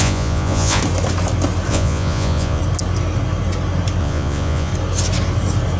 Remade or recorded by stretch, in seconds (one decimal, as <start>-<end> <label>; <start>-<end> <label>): 0.0-0.8 remade; 0.8-1.7 recorded; 1.7-2.6 remade; 2.6-4.0 recorded; 4.0-4.7 remade; 4.7-5.8 recorded